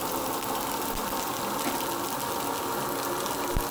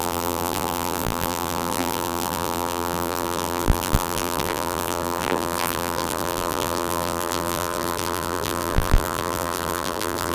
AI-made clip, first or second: second